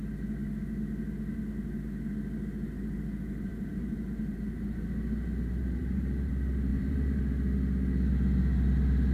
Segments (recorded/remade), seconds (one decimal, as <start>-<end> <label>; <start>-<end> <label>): 0.0-3.5 recorded; 3.5-6.3 remade; 6.3-6.7 recorded; 6.7-7.2 remade; 7.2-9.1 recorded